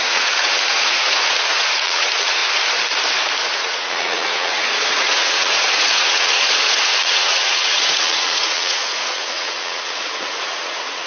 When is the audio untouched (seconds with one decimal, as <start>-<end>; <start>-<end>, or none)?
2.4-3.6